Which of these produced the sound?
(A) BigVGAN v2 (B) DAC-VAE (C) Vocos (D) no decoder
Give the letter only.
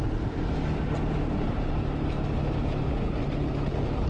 D